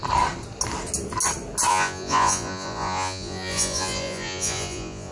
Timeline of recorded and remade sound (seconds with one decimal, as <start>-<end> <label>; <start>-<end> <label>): 0.0-1.7 recorded; 1.7-5.1 remade